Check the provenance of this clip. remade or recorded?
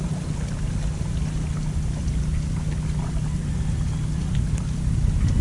recorded